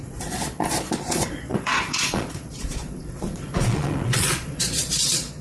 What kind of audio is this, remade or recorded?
remade